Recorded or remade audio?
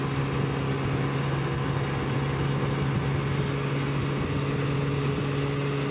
recorded